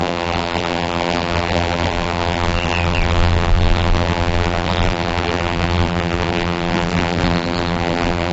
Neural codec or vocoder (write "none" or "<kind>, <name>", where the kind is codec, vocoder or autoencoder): vocoder, BigVGAN v2